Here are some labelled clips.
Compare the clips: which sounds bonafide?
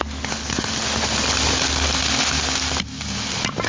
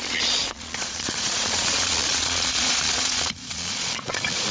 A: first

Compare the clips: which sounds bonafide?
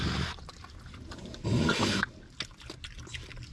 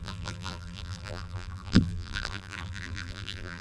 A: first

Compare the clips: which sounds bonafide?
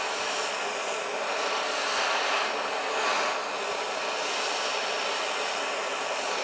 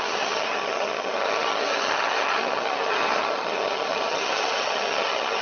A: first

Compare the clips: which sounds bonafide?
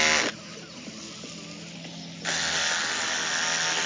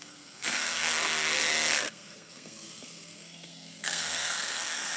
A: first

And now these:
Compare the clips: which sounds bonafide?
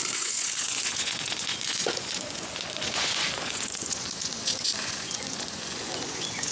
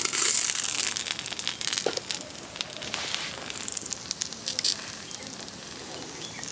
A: second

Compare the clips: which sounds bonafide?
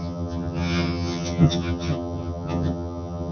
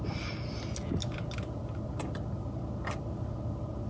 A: second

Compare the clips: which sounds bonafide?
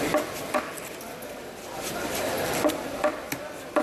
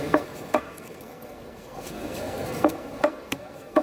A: first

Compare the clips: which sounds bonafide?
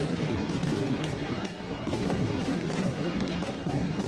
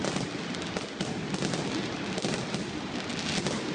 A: second